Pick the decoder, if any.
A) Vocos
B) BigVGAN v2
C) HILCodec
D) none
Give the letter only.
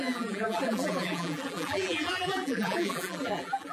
B